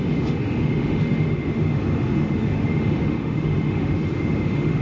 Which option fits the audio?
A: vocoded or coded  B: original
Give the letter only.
A